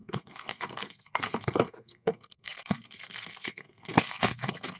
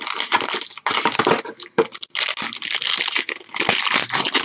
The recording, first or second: second